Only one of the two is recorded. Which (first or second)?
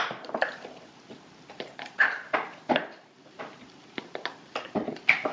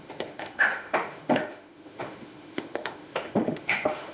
first